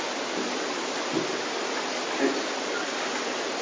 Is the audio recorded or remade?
recorded